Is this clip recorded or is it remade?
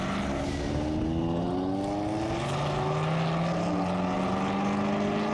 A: recorded